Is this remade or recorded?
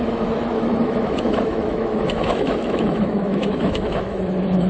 remade